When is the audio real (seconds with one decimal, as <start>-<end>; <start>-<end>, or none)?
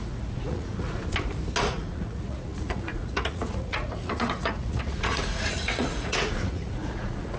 1.0-1.6